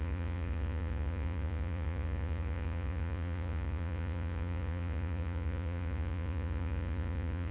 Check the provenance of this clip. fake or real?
fake